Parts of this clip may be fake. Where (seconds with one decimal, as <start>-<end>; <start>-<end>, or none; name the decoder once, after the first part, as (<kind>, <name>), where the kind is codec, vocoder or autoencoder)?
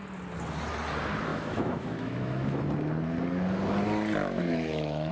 1.3-2.6 (autoencoder, DAC-VAE); 4.2-5.1